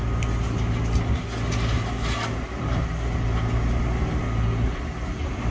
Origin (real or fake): real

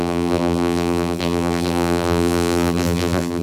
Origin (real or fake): fake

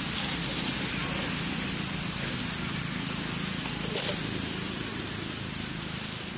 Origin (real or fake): real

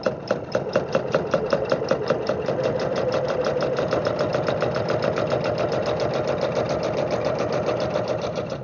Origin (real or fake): fake